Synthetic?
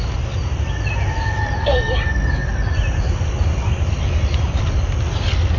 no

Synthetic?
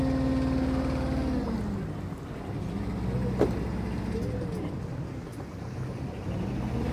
no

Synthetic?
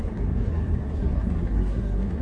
yes